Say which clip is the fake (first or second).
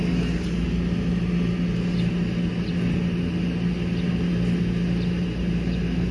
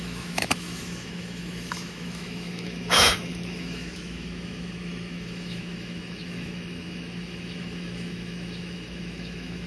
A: second